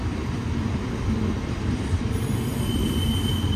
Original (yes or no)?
no